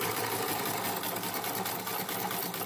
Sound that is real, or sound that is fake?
real